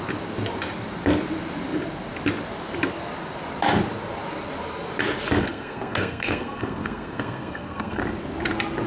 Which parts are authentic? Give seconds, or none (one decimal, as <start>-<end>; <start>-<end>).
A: 0.0-5.4; 8.0-8.9

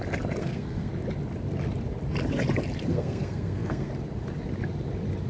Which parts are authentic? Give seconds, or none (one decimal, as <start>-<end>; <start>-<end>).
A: 0.0-0.4; 0.9-2.9; 3.9-5.3

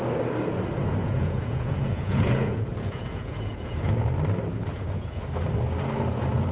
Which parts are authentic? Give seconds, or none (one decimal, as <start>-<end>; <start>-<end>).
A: 0.0-1.0; 3.9-4.7; 5.2-6.5

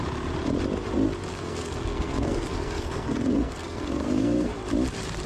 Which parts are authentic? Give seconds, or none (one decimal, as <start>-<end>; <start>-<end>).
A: 0.0-1.3; 4.5-5.3

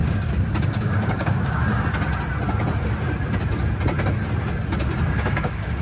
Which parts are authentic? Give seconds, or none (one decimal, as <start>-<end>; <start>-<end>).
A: 1.6-5.1

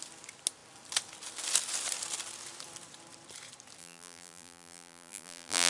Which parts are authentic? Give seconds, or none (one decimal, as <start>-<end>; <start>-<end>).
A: 0.0-3.8

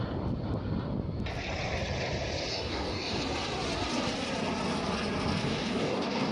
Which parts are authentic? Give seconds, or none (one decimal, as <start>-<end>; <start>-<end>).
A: 0.0-2.5; 3.2-5.4

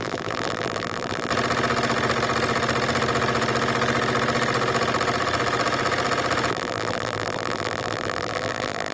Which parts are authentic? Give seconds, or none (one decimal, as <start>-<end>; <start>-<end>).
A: 1.3-6.5